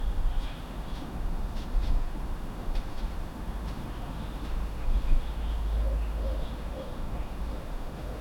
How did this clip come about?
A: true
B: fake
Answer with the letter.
B